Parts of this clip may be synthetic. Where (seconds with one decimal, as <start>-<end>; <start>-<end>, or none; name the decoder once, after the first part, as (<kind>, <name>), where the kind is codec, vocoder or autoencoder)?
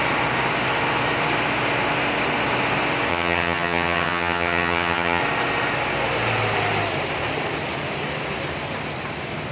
3.1-5.2 (vocoder, HiFi-GAN)